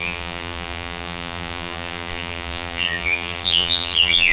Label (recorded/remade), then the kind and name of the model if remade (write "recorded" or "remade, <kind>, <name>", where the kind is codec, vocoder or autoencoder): remade, vocoder, BigVGAN v2